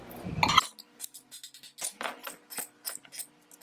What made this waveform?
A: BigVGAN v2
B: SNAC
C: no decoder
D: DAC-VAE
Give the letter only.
C